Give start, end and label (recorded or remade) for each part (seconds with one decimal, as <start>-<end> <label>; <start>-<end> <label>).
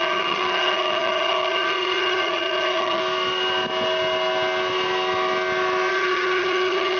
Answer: 0.0-3.0 remade; 3.0-5.9 recorded; 5.9-7.0 remade